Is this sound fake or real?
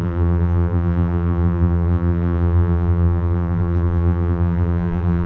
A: fake